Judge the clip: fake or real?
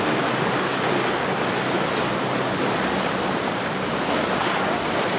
real